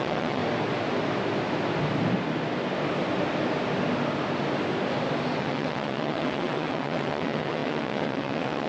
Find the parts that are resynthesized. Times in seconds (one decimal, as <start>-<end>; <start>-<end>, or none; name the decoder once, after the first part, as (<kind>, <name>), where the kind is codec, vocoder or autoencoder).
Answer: 0.0-0.4 (vocoder, WaveNeXt); 5.4-8.7